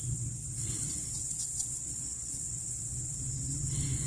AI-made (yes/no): yes